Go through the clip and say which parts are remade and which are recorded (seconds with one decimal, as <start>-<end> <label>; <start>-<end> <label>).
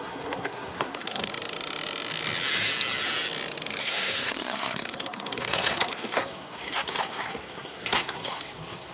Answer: 0.0-1.3 remade; 1.3-3.8 recorded; 3.8-8.9 remade